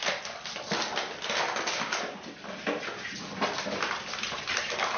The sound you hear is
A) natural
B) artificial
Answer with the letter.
A